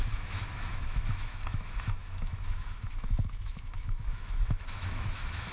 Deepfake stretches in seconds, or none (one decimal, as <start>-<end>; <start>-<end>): 0.0-5.5